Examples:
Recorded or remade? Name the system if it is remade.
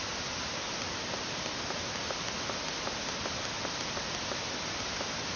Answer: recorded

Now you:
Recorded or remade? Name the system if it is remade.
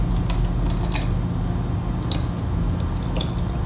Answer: recorded